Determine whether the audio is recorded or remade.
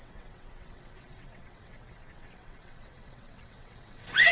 remade